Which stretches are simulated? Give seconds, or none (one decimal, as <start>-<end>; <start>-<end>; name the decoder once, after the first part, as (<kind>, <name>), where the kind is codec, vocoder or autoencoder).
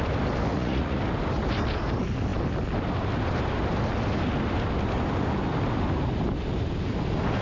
0.5-1.0 (vocoder, Vocos)